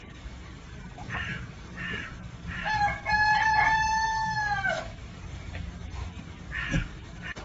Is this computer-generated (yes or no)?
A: yes